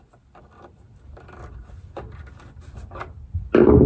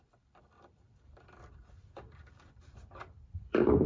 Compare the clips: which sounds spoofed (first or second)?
second